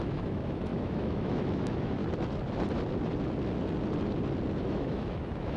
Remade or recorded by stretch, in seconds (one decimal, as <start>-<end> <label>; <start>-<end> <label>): 0.0-2.0 remade; 2.0-4.6 recorded; 4.6-5.6 remade